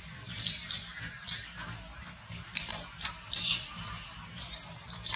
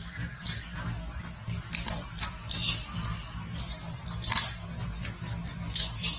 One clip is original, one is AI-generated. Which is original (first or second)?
second